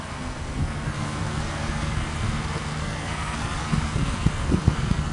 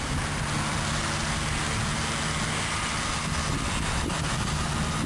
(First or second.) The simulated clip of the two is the first